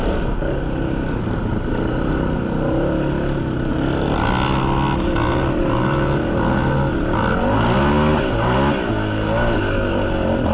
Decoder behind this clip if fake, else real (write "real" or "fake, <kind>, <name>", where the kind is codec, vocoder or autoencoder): real